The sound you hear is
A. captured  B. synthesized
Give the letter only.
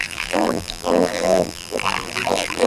B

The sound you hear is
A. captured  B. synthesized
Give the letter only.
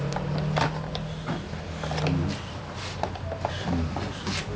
A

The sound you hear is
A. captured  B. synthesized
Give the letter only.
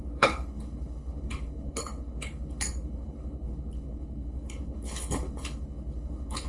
B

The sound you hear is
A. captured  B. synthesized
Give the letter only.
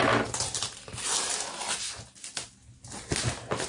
A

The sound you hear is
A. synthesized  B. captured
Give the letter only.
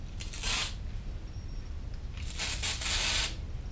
A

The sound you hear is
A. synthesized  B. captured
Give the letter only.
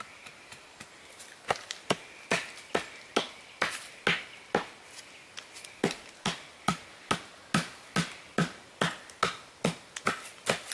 B